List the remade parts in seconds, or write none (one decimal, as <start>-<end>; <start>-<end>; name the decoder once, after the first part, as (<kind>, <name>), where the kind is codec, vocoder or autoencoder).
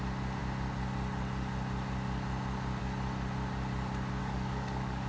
4.2-5.1 (codec, DAC)